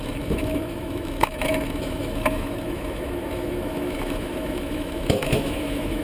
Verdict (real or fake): fake